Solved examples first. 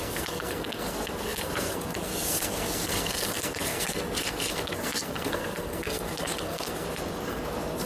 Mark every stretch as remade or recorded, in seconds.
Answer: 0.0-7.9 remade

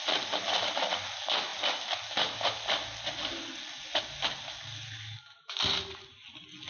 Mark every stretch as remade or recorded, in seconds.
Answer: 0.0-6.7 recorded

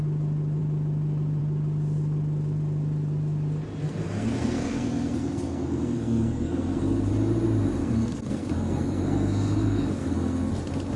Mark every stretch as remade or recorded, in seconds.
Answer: 0.0-3.8 recorded; 3.8-7.1 remade; 7.1-7.8 recorded; 7.8-10.5 remade; 10.5-11.0 recorded

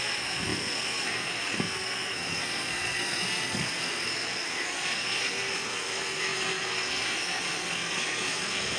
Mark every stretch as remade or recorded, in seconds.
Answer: 0.0-8.8 remade

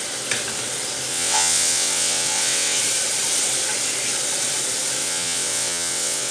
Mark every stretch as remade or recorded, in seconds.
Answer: 0.0-1.1 recorded; 1.1-2.8 remade; 2.8-5.0 recorded; 5.0-6.3 remade

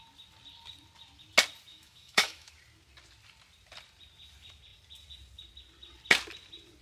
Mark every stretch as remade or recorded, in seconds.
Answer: 0.0-1.7 recorded; 1.7-2.5 remade; 2.5-6.8 recorded

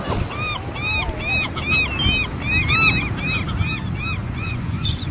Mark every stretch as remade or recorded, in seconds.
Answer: 0.0-4.2 recorded; 4.2-5.1 remade